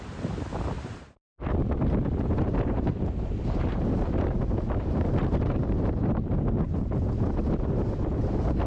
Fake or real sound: real